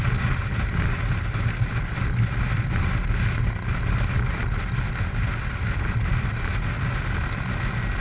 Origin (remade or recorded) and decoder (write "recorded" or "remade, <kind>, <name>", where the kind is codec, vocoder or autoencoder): recorded